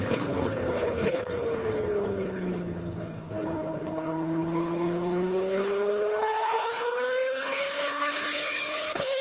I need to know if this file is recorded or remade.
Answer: remade